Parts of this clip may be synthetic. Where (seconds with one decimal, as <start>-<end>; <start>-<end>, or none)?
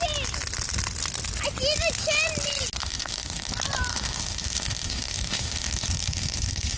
2.8-3.5; 3.9-6.8